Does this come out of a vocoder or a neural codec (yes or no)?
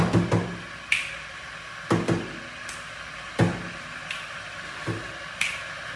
no